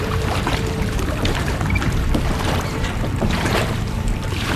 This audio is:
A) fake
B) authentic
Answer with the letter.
A